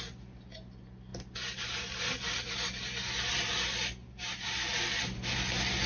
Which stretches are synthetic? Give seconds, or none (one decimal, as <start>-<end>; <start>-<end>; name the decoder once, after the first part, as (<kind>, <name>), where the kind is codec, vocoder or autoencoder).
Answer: none